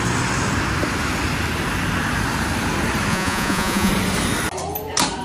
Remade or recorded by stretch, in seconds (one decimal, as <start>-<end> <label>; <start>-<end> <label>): 0.0-3.1 recorded; 3.1-3.9 remade; 3.9-5.2 recorded